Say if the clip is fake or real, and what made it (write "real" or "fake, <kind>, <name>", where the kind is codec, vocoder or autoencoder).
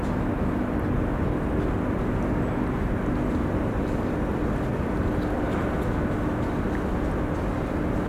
real